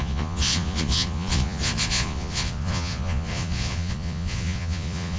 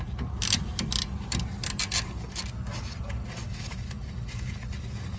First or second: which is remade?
first